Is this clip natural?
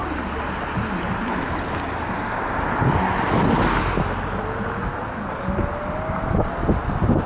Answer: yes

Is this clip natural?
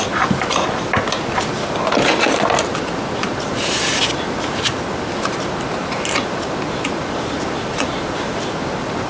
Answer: yes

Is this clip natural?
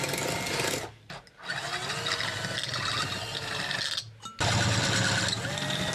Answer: yes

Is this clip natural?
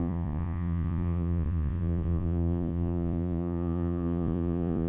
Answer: no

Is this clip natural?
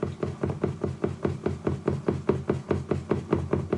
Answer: yes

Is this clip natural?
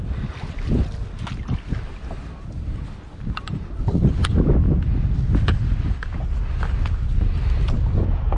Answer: yes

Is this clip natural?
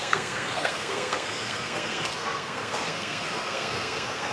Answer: no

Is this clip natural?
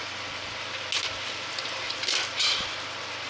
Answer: yes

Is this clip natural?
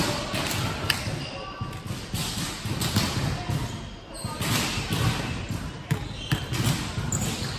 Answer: yes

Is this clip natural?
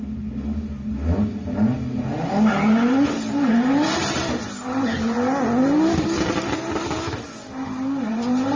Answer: yes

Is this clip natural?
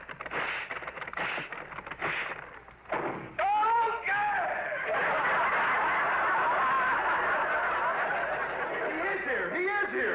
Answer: yes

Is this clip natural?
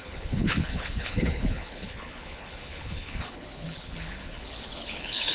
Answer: no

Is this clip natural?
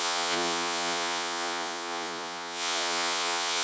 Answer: no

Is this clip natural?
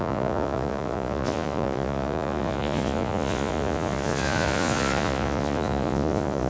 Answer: no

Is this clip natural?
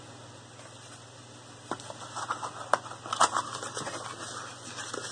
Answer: yes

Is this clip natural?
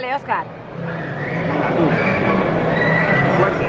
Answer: yes